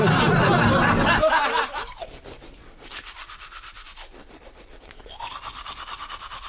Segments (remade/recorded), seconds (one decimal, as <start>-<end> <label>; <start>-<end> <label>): 0.0-6.5 recorded